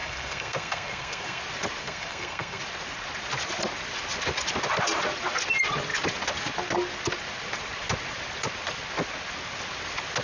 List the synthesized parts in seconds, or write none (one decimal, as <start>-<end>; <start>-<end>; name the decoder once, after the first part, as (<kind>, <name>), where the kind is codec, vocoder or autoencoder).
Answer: 0.0-1.4 (codec, SNAC); 1.8-2.6